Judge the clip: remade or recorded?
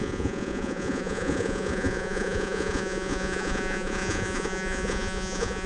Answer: remade